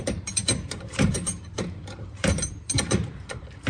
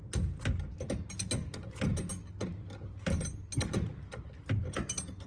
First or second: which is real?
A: second